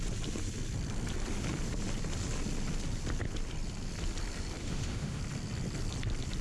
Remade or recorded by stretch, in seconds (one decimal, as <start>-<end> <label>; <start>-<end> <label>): 0.0-4.6 recorded; 4.6-5.2 remade; 5.2-6.4 recorded